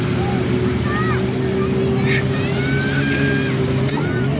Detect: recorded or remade recorded